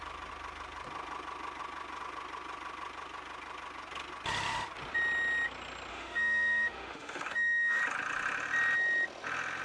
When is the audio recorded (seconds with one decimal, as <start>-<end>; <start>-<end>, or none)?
0.0-5.9; 7.8-9.6